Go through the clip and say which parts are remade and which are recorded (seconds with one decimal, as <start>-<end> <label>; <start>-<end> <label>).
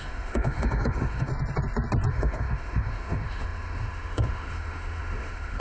0.0-1.3 remade; 1.3-2.1 recorded; 2.1-5.6 remade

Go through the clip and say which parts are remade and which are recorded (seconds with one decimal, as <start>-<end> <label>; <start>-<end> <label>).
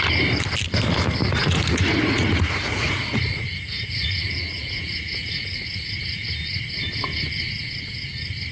0.0-1.2 recorded; 1.2-6.3 remade; 6.3-8.5 recorded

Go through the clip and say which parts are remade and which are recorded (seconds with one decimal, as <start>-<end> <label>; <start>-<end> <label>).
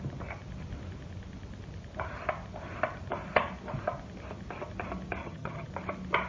0.0-5.2 recorded; 5.2-5.7 remade; 5.7-6.3 recorded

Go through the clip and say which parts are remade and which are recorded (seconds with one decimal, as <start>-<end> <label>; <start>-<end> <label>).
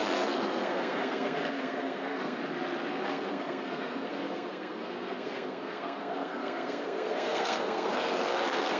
0.0-2.4 remade; 2.4-2.9 recorded; 2.9-8.8 remade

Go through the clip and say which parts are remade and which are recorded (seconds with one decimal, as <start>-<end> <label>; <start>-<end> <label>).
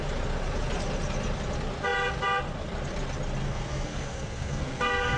0.0-3.4 recorded; 3.4-5.2 remade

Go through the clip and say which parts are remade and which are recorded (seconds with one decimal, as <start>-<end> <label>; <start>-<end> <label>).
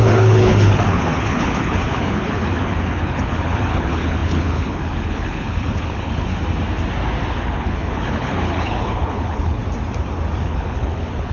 0.0-6.3 remade; 6.3-7.3 recorded; 7.3-9.6 remade; 9.6-10.4 recorded; 10.4-11.3 remade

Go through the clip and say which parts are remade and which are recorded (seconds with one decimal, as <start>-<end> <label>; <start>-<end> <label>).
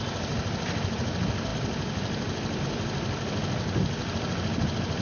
0.0-5.0 recorded